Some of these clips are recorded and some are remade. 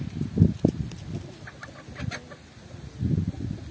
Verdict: recorded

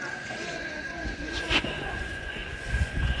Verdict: remade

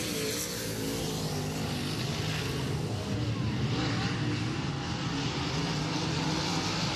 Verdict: recorded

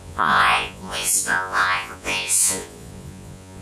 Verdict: remade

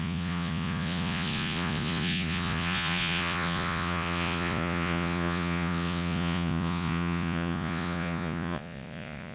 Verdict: remade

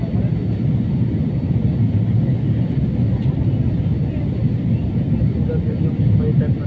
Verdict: recorded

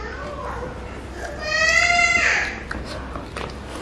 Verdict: recorded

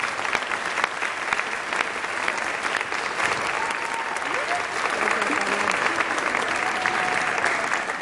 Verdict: recorded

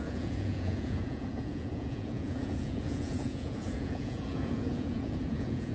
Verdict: remade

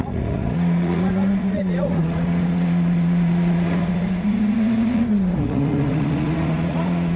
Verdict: remade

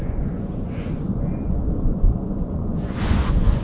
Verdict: remade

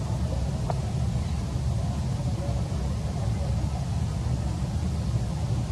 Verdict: recorded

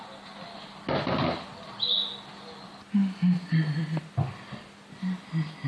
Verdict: recorded